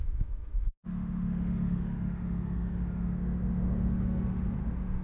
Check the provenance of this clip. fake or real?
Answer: fake